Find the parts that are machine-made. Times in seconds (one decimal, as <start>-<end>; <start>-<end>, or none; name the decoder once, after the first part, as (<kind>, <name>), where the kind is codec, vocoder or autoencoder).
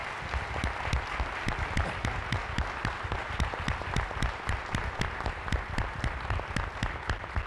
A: none